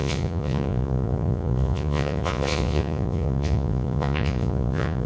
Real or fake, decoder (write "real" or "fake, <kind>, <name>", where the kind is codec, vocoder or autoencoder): fake, vocoder, Vocos